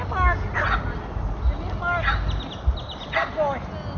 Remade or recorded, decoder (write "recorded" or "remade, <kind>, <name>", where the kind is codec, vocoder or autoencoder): recorded